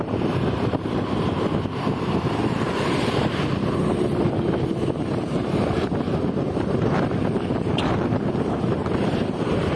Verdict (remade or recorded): remade